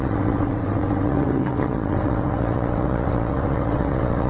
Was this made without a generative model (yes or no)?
no